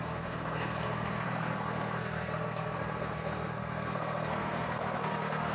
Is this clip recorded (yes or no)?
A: no